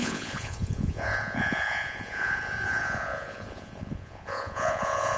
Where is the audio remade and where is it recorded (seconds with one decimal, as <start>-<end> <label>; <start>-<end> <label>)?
0.0-5.2 remade